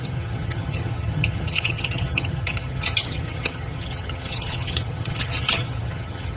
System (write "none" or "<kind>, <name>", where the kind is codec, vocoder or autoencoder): vocoder, HiFi-GAN